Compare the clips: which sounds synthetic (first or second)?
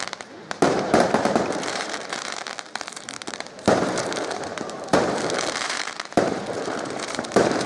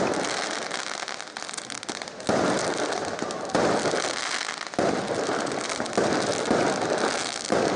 first